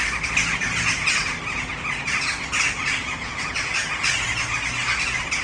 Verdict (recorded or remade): recorded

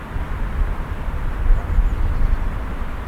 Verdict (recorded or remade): remade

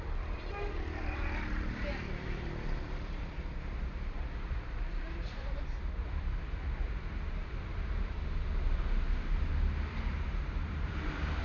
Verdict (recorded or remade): remade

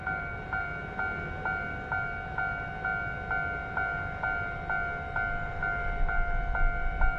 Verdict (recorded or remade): recorded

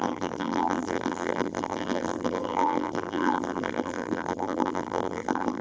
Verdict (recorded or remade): remade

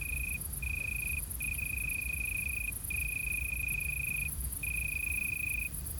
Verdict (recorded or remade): remade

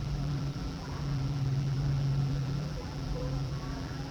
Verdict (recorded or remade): remade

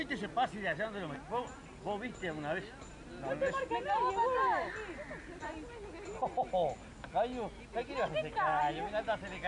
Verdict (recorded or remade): recorded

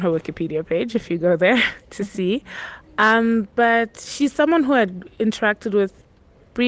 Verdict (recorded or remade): recorded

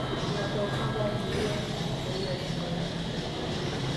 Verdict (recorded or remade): recorded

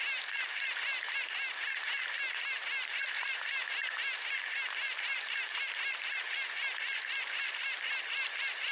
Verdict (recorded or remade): remade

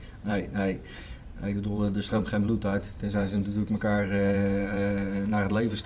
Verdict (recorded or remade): remade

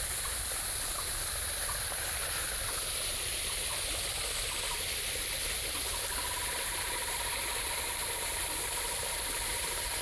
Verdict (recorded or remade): recorded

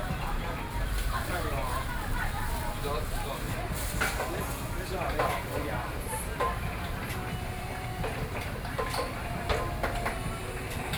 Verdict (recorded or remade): remade